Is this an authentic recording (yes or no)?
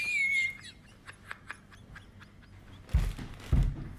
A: yes